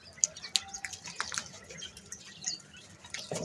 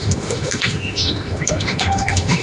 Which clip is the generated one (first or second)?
second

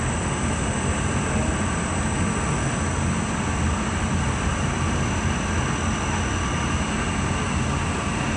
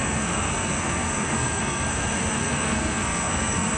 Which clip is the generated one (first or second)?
second